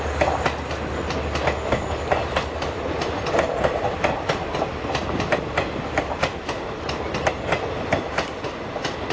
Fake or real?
real